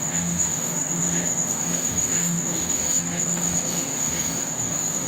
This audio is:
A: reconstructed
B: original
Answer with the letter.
A